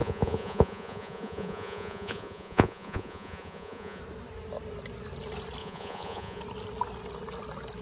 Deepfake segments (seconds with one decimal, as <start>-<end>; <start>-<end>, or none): 0.0-4.0; 5.6-6.4